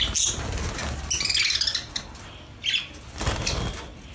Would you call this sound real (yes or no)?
yes